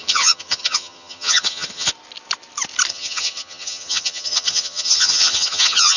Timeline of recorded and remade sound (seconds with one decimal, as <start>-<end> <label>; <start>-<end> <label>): 0.0-1.9 remade; 1.9-2.9 recorded; 2.9-6.0 remade